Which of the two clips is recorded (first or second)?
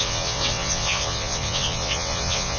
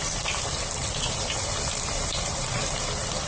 second